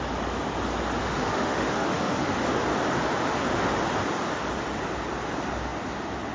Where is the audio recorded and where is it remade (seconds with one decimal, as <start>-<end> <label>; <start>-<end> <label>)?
0.0-1.0 recorded; 1.0-2.4 remade; 2.4-6.3 recorded